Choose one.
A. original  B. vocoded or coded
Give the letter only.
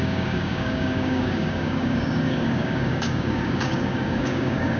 B